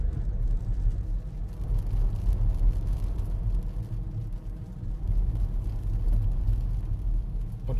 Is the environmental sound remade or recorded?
recorded